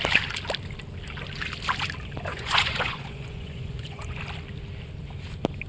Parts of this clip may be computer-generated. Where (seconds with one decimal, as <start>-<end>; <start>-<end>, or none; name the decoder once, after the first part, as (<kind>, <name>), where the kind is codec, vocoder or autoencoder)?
2.3-4.2 (vocoder, Vocos)